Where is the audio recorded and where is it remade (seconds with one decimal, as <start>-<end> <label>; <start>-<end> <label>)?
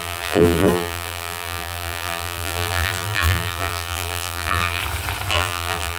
0.0-4.8 remade; 4.8-5.3 recorded; 5.3-6.0 remade